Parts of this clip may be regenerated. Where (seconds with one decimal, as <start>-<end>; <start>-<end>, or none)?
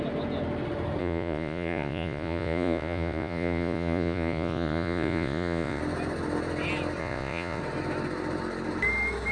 1.0-5.8; 7.0-7.6